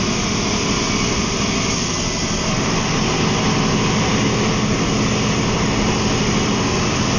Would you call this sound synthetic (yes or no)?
no